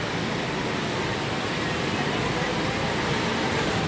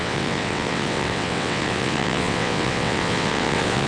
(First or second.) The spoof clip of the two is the second